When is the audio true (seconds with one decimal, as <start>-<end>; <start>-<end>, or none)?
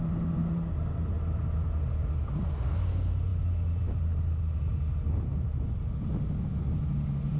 0.0-7.4